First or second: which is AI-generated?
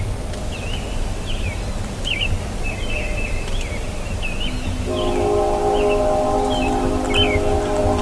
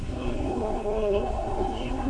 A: second